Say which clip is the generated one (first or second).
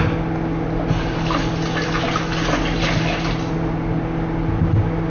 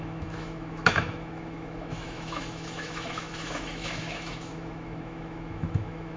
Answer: second